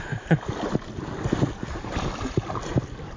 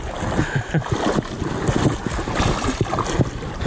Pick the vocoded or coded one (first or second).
first